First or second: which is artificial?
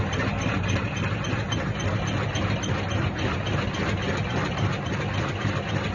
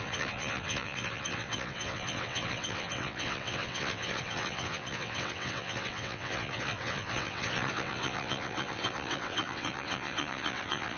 second